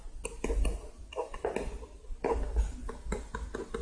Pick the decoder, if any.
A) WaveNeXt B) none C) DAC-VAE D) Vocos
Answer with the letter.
B